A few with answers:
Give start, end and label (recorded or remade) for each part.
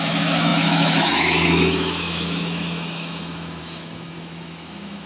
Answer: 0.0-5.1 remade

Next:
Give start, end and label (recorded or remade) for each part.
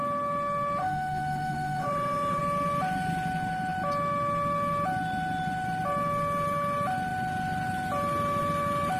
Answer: 0.0-0.8 recorded; 0.8-2.4 remade; 2.4-9.0 recorded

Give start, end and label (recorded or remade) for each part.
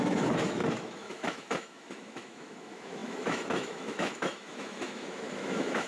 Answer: 0.0-5.9 remade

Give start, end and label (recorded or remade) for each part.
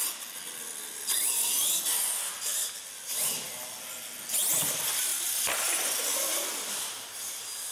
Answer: 0.0-7.7 recorded